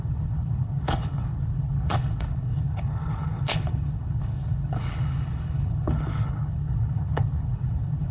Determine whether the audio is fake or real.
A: fake